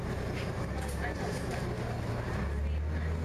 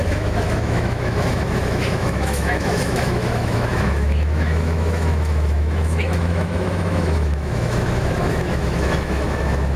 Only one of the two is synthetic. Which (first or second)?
second